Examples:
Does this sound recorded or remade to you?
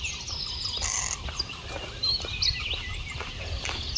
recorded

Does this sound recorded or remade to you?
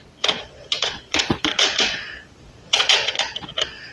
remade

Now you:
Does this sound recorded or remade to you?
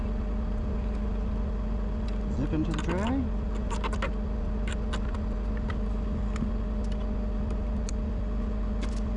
recorded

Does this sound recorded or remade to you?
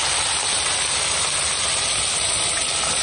remade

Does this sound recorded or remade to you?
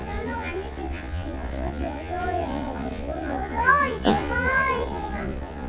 remade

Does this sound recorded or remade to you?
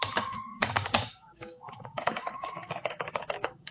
remade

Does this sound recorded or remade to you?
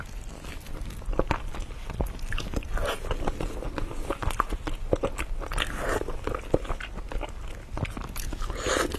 recorded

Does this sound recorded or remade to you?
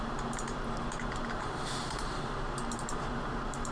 remade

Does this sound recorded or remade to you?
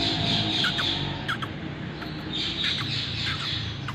recorded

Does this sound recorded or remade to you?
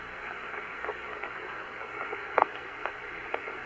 remade